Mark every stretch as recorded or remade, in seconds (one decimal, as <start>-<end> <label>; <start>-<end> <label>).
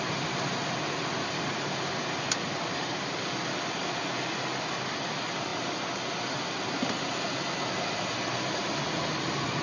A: 0.0-9.6 recorded